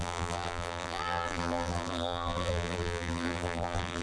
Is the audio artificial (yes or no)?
yes